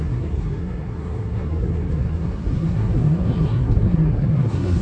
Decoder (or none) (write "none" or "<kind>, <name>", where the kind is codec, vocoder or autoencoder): codec, SNAC